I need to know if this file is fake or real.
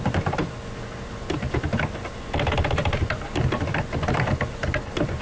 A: real